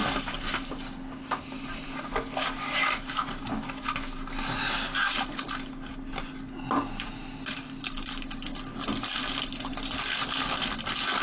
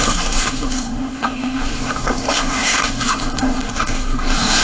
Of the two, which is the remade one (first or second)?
second